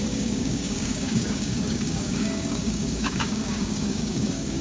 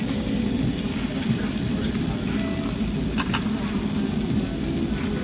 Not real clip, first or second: first